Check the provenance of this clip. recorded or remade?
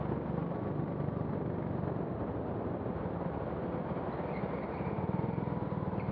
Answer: recorded